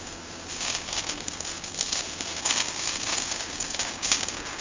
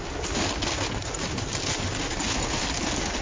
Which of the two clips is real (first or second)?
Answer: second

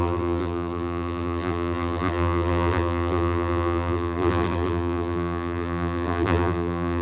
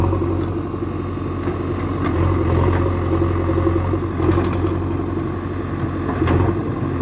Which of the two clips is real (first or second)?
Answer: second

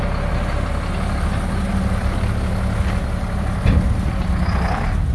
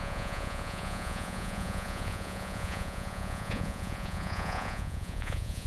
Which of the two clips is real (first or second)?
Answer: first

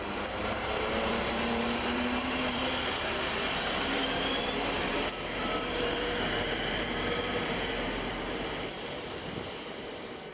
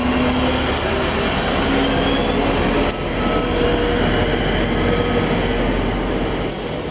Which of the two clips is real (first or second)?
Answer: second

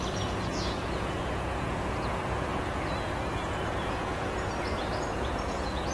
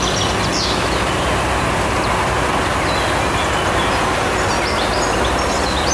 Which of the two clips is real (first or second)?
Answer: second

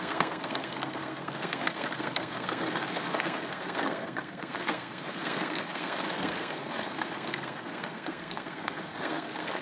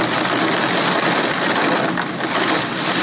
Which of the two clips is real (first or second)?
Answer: second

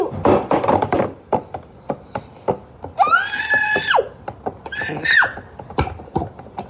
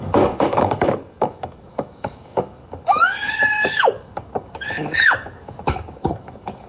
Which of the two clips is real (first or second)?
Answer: first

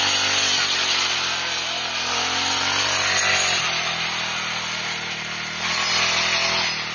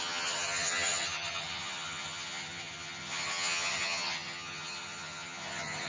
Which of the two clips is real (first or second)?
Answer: first